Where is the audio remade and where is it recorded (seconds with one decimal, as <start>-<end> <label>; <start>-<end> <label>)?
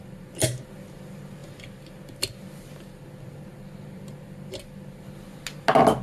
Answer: 0.0-6.0 recorded